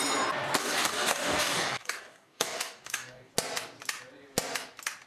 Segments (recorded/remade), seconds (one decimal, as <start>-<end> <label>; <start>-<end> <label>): 0.0-0.6 recorded; 0.6-3.3 remade; 3.3-5.1 recorded